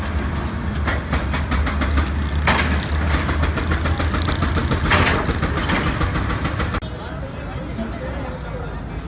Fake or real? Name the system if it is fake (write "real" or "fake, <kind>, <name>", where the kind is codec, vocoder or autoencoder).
real